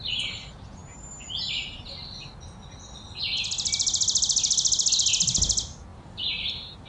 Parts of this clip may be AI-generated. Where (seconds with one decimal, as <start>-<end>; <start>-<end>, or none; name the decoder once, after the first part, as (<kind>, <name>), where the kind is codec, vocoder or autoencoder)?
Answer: 5.9-6.5 (vocoder, BigVGAN v2)

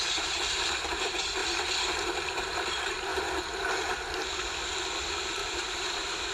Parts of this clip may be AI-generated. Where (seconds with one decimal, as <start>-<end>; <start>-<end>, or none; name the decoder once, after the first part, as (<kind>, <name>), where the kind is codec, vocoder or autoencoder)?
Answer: 0.0-3.1 (vocoder, BigVGAN v2); 5.0-6.3